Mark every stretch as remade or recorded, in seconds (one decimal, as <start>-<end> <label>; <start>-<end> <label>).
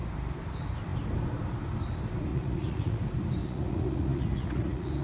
0.0-2.3 recorded; 2.3-3.0 remade; 3.0-3.4 recorded; 3.4-5.0 remade